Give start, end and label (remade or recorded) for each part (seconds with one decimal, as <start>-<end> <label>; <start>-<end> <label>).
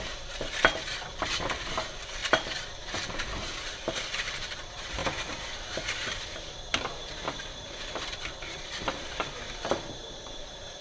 0.0-5.0 remade; 5.0-5.8 recorded; 5.8-10.8 remade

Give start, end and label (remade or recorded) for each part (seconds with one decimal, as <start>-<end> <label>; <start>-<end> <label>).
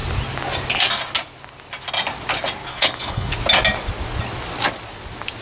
0.0-2.7 recorded; 2.7-3.3 remade; 3.3-5.4 recorded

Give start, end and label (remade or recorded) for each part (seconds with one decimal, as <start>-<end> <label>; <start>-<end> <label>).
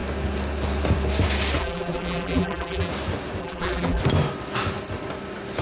0.0-1.6 recorded; 1.6-2.9 remade; 2.9-3.4 recorded; 3.4-4.0 remade; 4.0-5.6 recorded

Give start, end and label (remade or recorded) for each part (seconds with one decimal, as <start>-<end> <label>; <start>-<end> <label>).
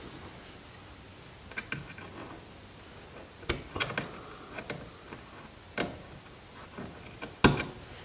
0.0-8.0 recorded